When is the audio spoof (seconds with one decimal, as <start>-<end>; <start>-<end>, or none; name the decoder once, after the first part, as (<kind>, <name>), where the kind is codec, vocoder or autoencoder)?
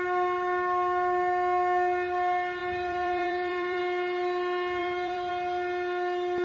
2.6-3.8 (vocoder, BigVGAN v2); 4.8-5.3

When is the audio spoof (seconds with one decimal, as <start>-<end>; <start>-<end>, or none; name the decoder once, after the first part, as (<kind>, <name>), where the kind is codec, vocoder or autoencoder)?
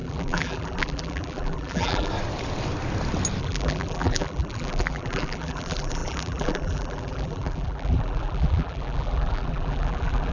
0.0-2.1 (vocoder, BigVGAN v2); 3.4-10.3